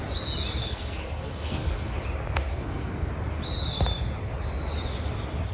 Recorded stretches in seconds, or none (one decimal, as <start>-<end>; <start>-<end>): 0.0-0.6; 1.9-2.5; 3.1-5.5